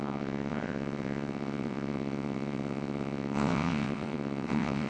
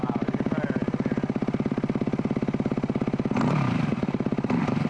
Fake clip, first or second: first